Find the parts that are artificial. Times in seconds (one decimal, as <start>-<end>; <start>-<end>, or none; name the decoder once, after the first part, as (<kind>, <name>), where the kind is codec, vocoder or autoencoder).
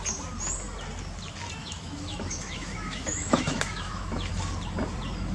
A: 1.6-4.3 (autoencoder, DAC-VAE)